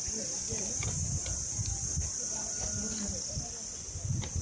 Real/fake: real